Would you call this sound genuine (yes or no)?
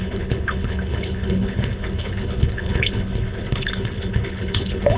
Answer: no